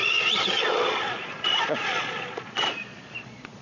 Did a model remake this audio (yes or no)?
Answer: yes